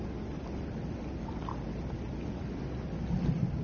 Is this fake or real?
real